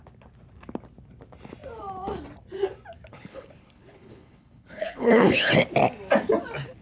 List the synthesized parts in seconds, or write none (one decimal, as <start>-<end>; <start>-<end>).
3.1-5.5